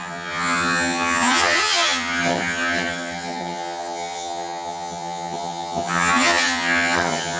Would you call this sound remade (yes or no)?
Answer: yes